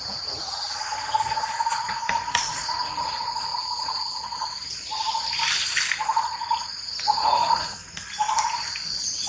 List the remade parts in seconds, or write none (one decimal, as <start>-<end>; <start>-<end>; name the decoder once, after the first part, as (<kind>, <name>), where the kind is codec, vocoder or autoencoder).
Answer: 0.0-3.5 (vocoder, Vocos); 7.0-7.8